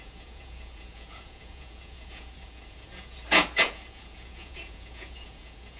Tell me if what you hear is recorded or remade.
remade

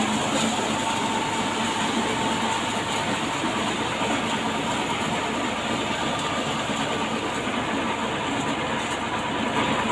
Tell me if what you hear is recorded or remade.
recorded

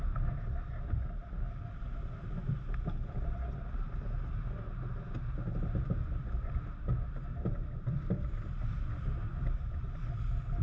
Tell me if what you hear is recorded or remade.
recorded